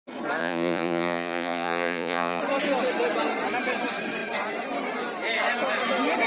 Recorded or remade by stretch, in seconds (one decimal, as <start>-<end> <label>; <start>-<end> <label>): 0.0-0.4 recorded; 0.4-2.4 remade; 2.4-6.3 recorded